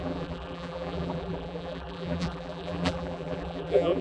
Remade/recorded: remade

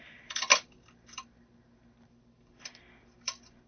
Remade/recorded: remade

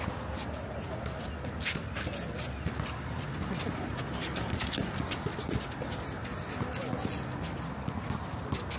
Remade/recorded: recorded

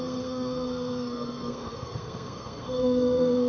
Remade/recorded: remade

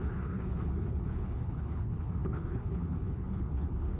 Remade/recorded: remade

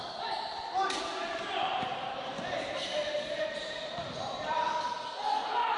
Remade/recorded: remade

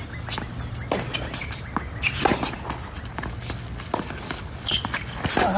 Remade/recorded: recorded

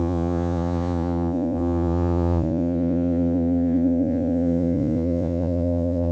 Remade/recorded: remade